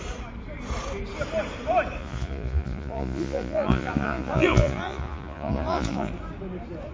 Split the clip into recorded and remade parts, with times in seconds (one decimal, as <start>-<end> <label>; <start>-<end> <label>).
0.0-2.0 recorded; 2.0-6.1 remade; 6.1-6.9 recorded